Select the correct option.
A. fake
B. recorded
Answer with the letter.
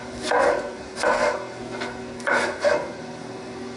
A